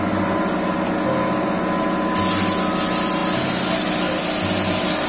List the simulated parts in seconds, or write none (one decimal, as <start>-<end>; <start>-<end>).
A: none